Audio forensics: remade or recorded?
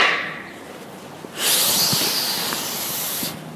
recorded